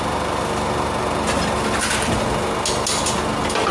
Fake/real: real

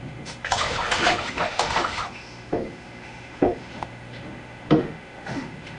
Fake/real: fake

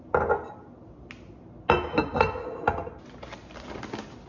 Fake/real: real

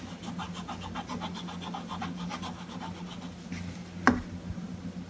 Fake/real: real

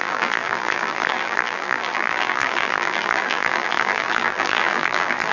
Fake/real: fake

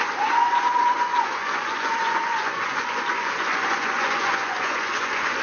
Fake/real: fake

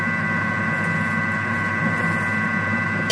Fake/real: real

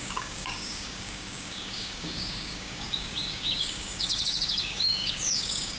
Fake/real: fake